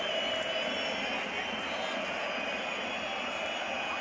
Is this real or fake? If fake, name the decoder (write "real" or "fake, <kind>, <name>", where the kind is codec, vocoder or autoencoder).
real